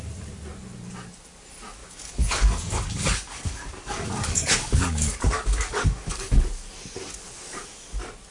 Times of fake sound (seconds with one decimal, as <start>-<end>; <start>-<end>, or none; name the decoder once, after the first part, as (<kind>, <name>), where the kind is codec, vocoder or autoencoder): 1.8-6.4 (codec, DAC)